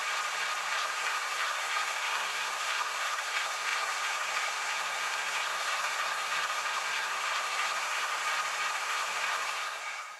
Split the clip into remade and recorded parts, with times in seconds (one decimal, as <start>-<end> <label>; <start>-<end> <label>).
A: 0.0-0.7 recorded; 0.7-8.1 remade; 8.1-8.7 recorded; 8.7-10.2 remade